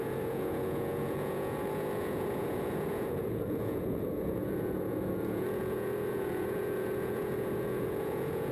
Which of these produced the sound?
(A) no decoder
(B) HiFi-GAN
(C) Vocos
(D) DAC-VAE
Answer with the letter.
C